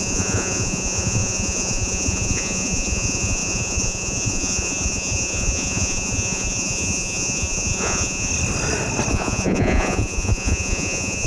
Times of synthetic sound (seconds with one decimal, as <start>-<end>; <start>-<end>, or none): 0.0-8.3; 9.1-11.3